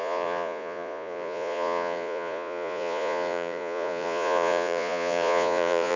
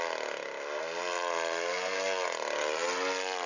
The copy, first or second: first